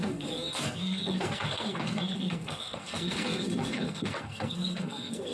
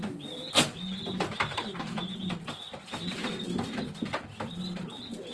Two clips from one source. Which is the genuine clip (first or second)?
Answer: second